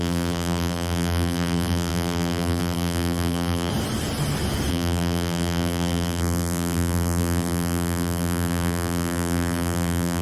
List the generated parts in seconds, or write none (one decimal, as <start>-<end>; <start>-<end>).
0.0-3.7; 4.7-10.2